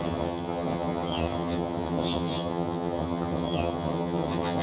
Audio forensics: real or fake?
fake